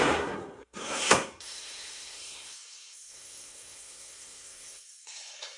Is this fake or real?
fake